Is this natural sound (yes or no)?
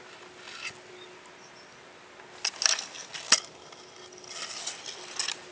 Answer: yes